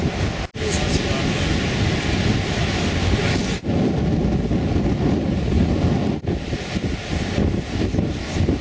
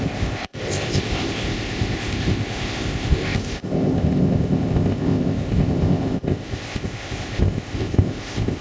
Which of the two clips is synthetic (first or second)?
second